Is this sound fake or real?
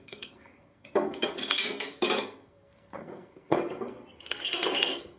fake